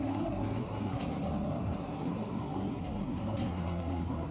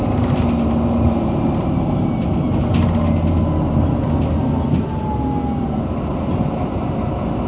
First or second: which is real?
second